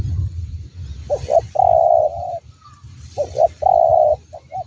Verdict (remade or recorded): recorded